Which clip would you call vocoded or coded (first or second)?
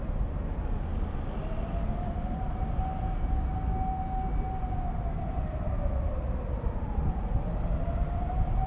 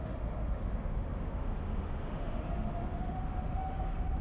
second